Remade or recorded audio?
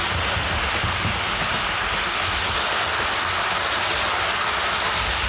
recorded